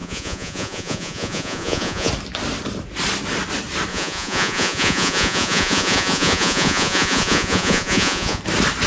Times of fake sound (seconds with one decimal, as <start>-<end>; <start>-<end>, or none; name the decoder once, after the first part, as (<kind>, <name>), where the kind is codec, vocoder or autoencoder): 0.0-2.1 (vocoder, Vocos); 3.9-8.4